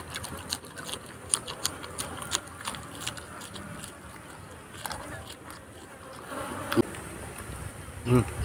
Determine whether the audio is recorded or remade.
recorded